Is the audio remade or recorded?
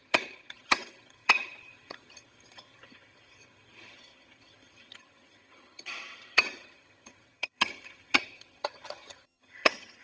remade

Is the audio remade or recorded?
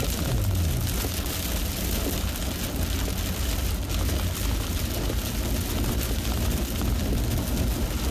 recorded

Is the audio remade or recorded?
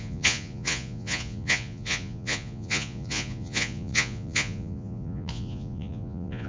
remade